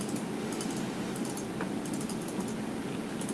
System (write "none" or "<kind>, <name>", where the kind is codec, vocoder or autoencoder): none